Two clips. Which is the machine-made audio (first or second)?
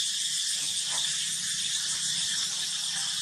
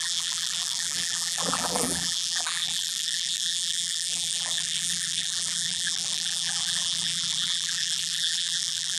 second